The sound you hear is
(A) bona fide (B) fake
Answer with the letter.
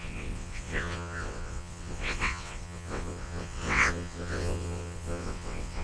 B